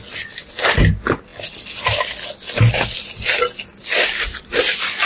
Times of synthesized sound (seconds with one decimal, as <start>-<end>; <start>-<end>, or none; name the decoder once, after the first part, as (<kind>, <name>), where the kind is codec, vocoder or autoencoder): none